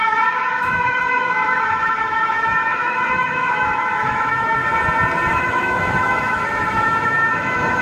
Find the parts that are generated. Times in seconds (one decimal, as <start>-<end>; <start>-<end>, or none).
0.0-4.6; 5.3-7.8